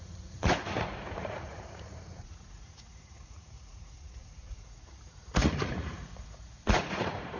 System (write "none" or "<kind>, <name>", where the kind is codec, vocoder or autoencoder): vocoder, Vocos